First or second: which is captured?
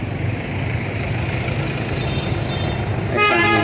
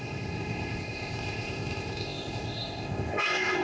first